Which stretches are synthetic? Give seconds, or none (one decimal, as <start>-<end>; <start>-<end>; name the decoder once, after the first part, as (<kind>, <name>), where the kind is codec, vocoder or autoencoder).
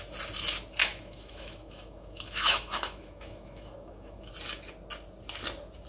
0.8-4.3 (autoencoder, DAC-VAE)